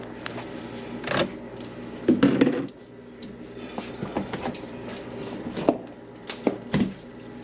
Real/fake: real